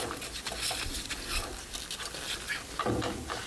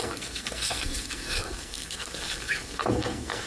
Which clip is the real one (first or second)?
first